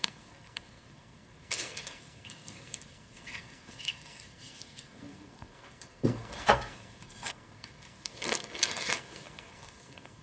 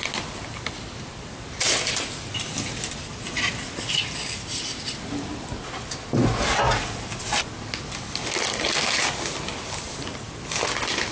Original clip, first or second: second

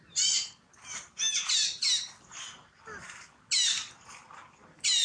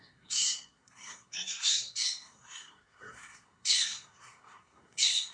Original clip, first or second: first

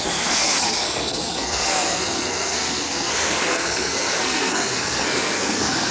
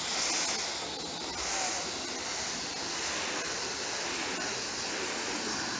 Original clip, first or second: second